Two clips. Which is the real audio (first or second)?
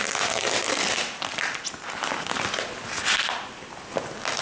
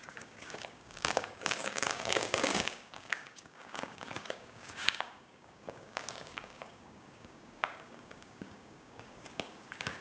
first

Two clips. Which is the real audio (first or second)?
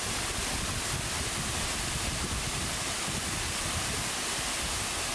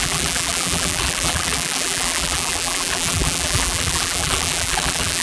first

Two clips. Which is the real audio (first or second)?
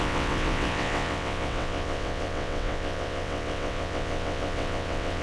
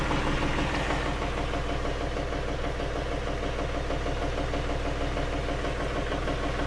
second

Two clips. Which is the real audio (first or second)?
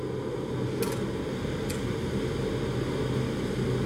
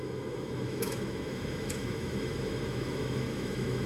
first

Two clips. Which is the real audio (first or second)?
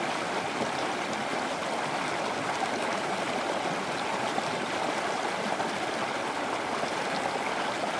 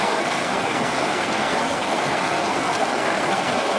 first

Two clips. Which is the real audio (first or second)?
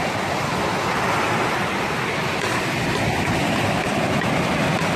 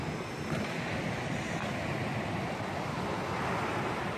first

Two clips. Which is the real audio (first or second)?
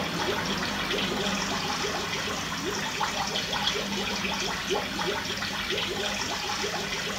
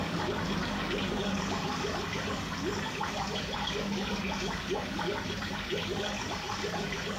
first